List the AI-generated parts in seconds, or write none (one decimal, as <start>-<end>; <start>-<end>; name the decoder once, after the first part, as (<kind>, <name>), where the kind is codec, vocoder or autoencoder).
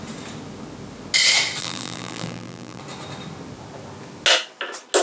1.6-2.8 (vocoder, BigVGAN v2)